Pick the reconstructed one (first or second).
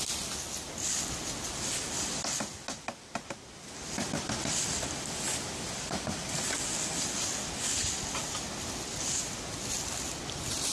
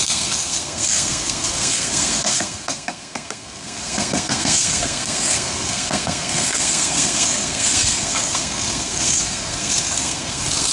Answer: second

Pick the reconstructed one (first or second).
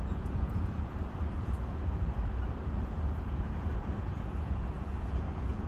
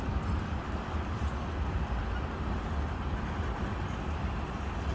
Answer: first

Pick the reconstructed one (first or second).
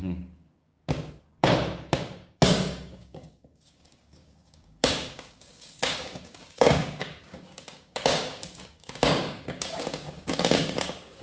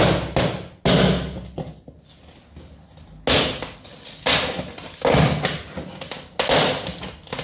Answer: first